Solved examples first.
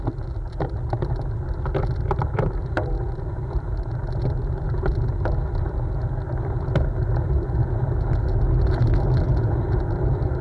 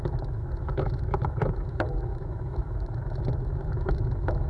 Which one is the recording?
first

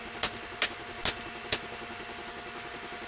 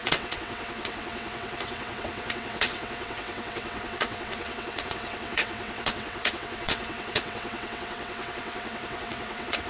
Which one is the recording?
first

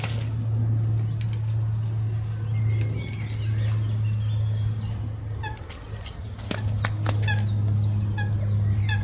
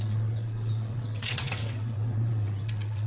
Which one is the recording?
first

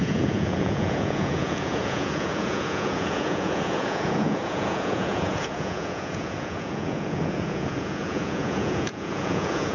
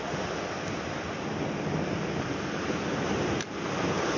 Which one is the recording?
second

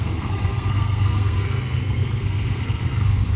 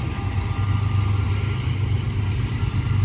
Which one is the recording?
second